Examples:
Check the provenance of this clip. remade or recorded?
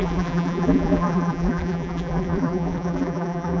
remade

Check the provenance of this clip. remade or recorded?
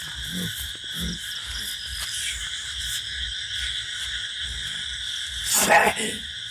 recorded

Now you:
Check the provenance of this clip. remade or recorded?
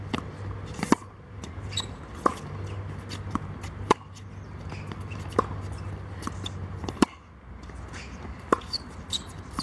remade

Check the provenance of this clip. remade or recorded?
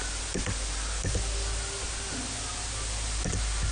recorded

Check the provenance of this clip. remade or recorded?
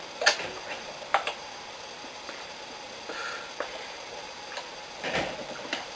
remade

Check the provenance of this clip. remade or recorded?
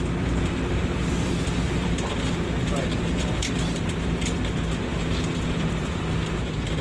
remade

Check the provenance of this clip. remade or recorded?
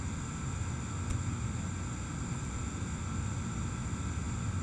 recorded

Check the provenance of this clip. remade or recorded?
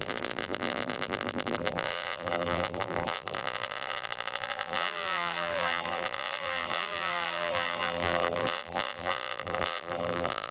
remade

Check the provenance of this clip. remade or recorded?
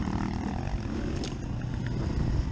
recorded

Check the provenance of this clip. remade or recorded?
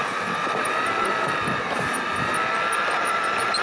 recorded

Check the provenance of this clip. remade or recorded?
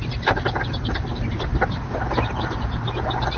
remade